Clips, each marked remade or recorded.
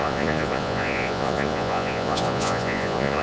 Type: remade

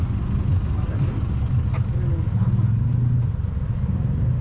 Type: recorded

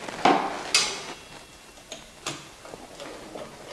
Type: recorded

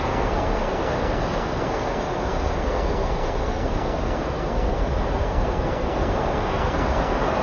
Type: remade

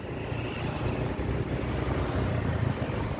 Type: recorded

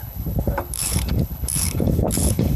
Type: remade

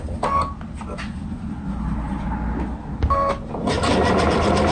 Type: recorded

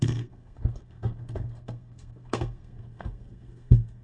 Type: remade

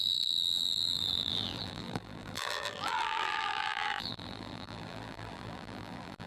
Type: remade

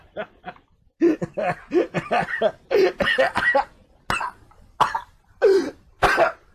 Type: recorded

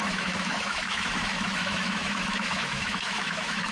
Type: remade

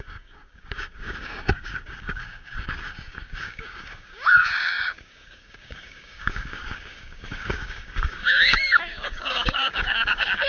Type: remade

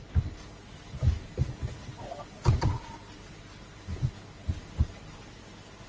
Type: recorded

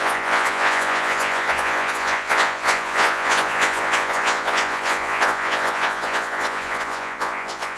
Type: remade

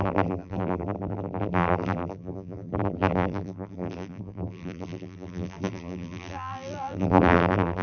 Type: remade